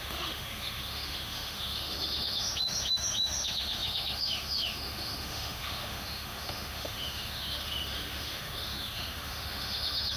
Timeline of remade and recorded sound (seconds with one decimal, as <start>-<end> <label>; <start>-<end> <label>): 0.0-10.2 remade